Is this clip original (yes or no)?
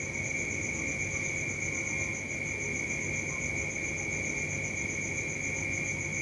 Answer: yes